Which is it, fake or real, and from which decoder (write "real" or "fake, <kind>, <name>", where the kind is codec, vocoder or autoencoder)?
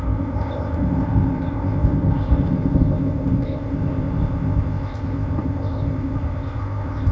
fake, codec, ZipCodec